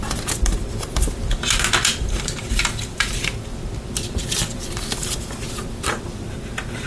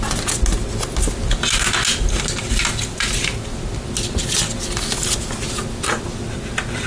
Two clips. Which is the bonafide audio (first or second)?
second